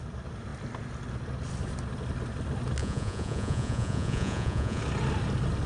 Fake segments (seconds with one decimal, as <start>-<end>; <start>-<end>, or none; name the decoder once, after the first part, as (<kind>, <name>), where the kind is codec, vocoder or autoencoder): 2.8-4.8 (vocoder, Vocos)